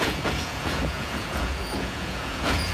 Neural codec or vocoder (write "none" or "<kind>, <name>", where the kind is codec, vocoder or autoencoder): vocoder, Vocos